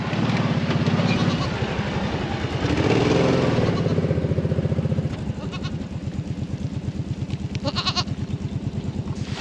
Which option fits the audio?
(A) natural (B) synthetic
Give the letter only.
A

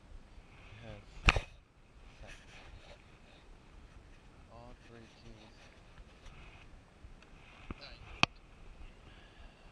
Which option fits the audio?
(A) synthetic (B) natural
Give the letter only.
B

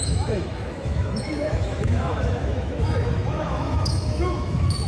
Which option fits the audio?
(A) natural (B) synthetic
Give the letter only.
B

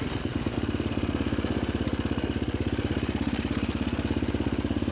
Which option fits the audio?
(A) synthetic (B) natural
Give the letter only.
B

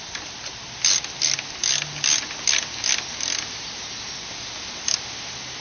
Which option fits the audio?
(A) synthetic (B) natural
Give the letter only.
B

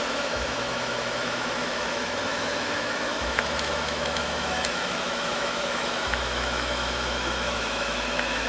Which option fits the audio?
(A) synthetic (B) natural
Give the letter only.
A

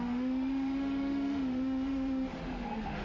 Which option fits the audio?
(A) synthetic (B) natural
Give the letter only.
A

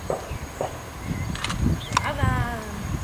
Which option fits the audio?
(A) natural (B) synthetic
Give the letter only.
A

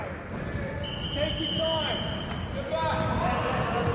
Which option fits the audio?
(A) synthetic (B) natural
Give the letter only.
B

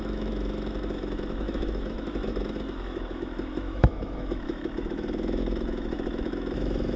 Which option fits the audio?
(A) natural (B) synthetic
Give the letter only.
B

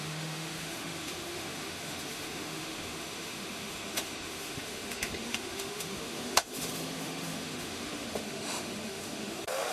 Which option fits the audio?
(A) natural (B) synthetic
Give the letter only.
B